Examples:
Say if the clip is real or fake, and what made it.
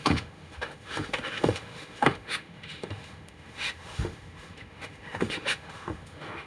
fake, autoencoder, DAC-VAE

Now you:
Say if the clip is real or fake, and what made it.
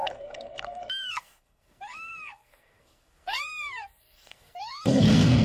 fake, codec, SNAC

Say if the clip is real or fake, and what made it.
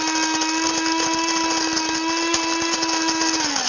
real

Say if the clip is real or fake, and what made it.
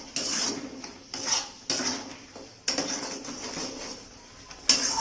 real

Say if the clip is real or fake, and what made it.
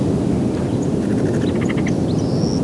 real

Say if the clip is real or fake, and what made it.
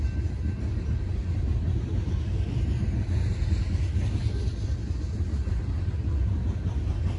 real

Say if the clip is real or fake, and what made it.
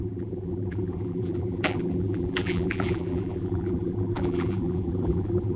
fake, vocoder, BigVGAN v2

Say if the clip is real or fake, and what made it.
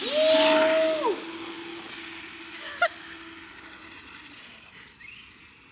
real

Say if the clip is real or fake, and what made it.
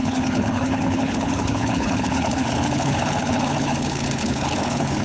fake, codec, HILCodec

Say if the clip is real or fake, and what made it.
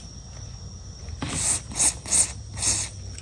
real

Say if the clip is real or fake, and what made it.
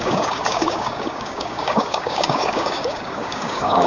fake, codec, DAC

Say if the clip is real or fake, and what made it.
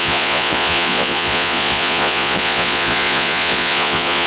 fake, vocoder, Vocos